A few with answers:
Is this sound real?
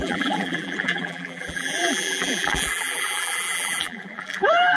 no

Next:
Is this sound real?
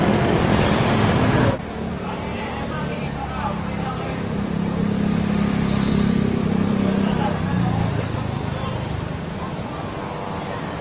no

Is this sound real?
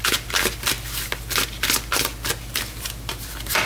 yes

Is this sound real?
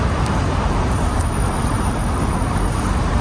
no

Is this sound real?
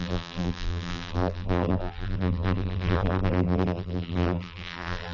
no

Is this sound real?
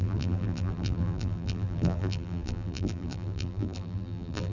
no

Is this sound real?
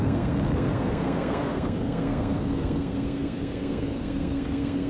no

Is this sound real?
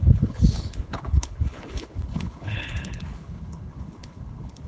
no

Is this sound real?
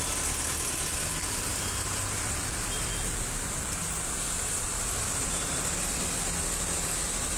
yes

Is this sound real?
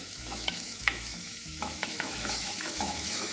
no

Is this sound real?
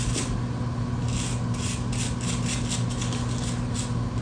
yes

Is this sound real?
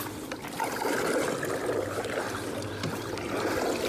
yes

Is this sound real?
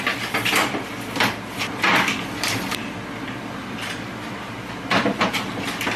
yes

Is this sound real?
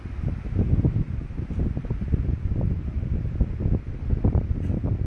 yes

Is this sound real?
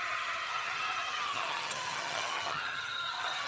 no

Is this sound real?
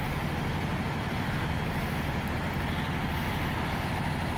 yes